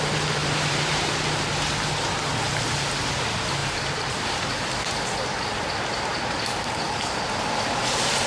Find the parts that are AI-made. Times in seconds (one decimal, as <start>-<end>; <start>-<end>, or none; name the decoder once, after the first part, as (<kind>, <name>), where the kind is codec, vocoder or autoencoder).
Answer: 0.4-1.1 (vocoder, BigVGAN v2); 3.6-4.9